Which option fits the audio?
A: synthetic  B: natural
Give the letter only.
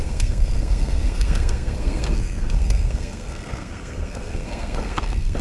A